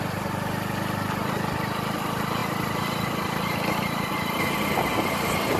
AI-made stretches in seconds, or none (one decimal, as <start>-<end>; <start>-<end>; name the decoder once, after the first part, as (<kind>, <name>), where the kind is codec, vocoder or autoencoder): none